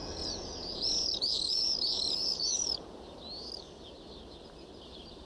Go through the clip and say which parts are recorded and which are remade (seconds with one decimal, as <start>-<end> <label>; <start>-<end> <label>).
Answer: 0.0-3.2 remade; 3.2-5.3 recorded